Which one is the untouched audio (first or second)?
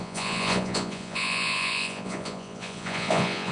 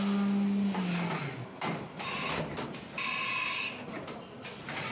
second